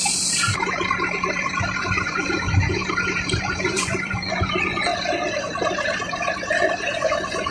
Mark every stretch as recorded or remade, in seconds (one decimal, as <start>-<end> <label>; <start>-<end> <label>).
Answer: 0.0-1.8 recorded; 1.8-2.8 remade; 2.8-3.4 recorded; 3.4-4.9 remade; 4.9-6.7 recorded; 6.7-7.5 remade